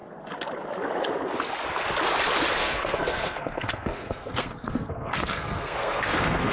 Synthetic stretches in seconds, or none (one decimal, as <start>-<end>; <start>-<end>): 2.6-6.5